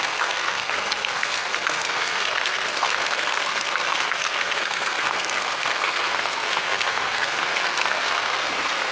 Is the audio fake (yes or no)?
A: yes